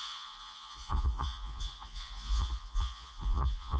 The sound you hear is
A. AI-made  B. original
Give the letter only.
A